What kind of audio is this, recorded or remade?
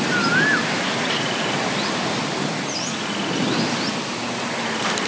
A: recorded